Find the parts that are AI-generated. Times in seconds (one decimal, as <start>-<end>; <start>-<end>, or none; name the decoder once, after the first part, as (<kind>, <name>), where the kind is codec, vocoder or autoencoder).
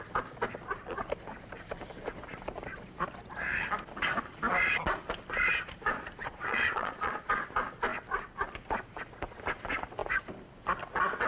6.2-7.2 (vocoder, Vocos)